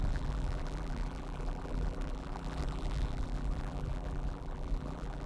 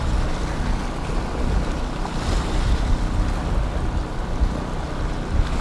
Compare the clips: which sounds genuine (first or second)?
second